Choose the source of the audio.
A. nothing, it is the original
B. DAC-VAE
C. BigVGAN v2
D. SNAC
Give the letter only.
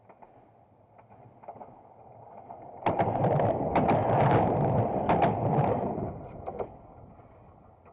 A